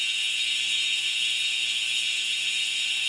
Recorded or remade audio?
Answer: remade